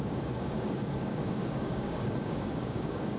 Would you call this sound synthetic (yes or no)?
yes